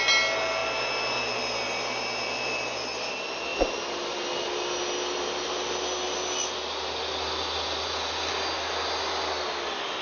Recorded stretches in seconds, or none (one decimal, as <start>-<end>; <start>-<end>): 0.0-10.0